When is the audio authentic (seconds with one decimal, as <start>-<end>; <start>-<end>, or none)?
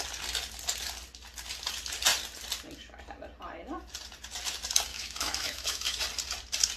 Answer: 0.0-4.9; 6.0-6.8